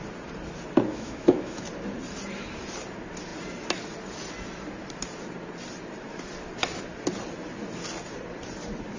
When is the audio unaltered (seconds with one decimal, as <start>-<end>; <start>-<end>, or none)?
0.0-0.9; 1.6-9.0